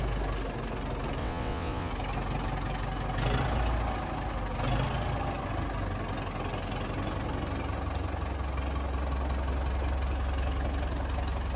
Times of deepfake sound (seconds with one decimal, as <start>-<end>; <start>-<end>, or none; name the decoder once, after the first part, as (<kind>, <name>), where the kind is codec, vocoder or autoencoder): 1.2-1.9 (vocoder, WaveNeXt)